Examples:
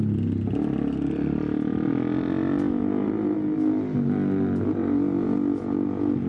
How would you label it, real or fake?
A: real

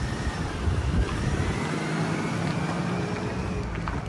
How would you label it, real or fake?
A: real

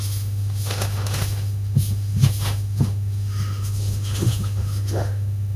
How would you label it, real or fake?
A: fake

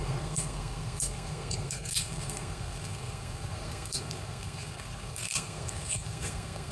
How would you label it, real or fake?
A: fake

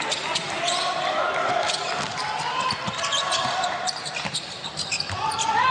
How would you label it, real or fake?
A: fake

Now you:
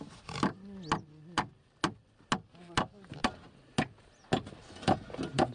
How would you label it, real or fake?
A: real